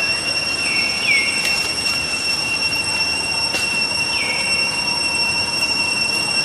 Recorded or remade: remade